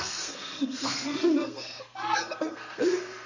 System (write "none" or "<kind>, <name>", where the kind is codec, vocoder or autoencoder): codec, SNAC